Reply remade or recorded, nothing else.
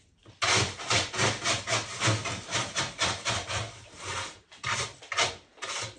recorded